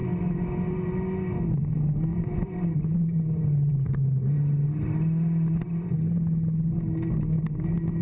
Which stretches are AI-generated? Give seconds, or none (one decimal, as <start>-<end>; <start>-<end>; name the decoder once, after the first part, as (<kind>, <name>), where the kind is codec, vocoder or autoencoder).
2.1-3.9 (vocoder, BigVGAN v2)